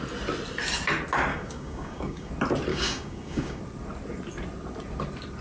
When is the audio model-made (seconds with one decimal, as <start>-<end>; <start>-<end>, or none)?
1.3-2.3; 2.7-3.6